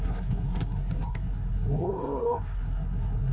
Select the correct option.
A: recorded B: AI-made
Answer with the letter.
B